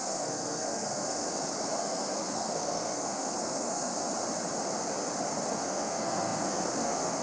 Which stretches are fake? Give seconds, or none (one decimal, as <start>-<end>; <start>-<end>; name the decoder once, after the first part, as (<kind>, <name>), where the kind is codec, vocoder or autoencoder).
0.0-1.3 (codec, SNAC); 1.8-3.9; 5.5-7.2